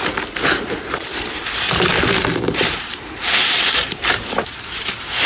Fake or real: fake